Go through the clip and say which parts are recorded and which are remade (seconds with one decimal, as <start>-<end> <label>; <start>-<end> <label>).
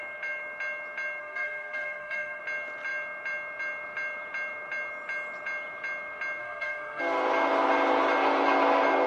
0.0-1.2 recorded; 1.2-2.4 remade; 2.4-6.4 recorded; 6.4-7.0 remade; 7.0-9.1 recorded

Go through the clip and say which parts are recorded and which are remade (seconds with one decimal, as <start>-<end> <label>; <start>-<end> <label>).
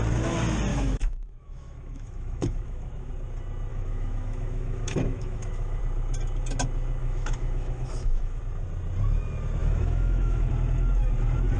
0.0-0.7 recorded; 0.7-3.1 remade; 3.1-3.7 recorded; 3.7-5.8 remade; 5.8-7.0 recorded; 7.0-8.4 remade; 8.4-9.6 recorded; 9.6-10.5 remade; 10.5-11.6 recorded